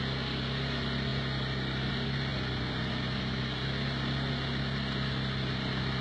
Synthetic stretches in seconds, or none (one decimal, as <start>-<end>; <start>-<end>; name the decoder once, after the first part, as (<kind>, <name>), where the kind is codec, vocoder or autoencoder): none